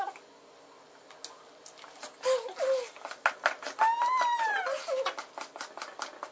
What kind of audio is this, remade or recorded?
recorded